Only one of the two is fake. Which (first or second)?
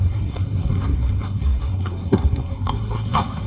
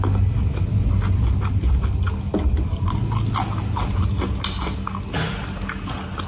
first